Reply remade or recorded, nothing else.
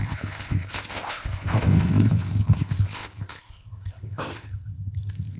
remade